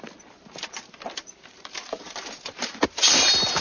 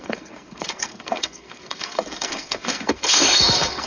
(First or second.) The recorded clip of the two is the first